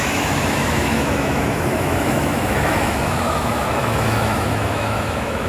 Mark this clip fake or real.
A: fake